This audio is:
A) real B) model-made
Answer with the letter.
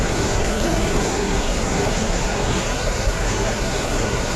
B